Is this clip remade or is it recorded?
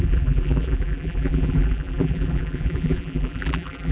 remade